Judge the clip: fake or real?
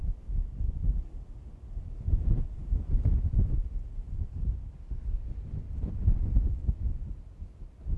real